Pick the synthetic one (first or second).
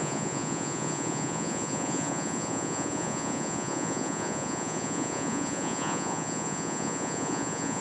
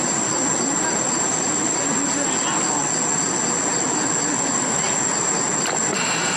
first